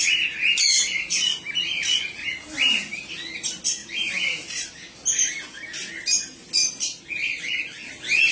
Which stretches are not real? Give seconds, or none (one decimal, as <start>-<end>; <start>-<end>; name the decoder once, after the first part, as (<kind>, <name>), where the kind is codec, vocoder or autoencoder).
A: none